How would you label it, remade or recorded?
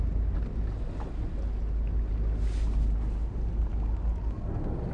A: recorded